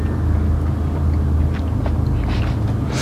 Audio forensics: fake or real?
real